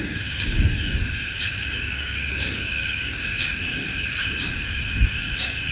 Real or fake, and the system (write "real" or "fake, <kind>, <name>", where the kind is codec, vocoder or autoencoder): fake, codec, DAC